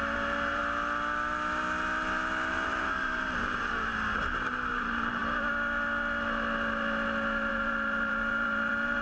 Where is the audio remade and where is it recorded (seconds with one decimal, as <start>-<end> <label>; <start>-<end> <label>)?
0.0-0.6 remade; 0.6-2.5 recorded; 2.5-3.9 remade; 3.9-4.7 recorded; 4.7-5.2 remade; 5.2-7.5 recorded; 7.5-9.0 remade